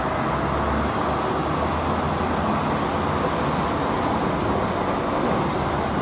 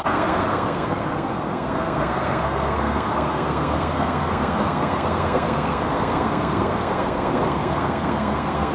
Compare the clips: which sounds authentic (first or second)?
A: first